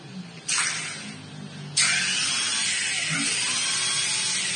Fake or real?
real